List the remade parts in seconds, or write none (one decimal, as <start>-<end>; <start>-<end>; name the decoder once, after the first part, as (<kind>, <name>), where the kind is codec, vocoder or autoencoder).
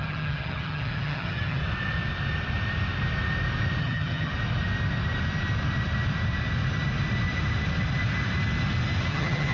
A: 0.0-1.6 (vocoder, HiFi-GAN); 3.8-4.3; 9.1-9.5